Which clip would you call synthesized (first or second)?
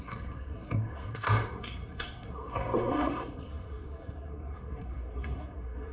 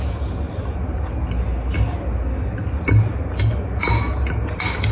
first